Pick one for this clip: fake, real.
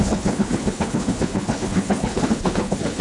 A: fake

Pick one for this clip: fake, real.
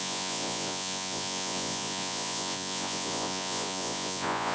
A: fake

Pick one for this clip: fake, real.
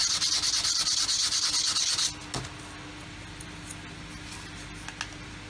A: real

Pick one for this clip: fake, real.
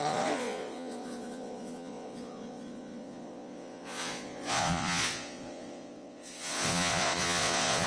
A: fake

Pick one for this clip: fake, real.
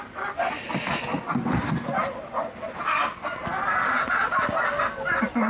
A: real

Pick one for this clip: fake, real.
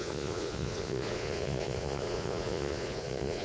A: fake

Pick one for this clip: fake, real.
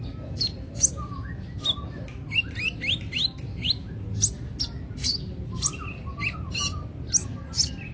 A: real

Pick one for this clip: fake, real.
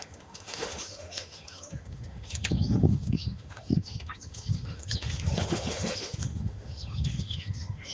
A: fake